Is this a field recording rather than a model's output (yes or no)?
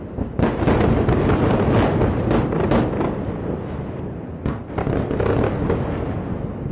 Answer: yes